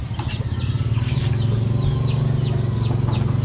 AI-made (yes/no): no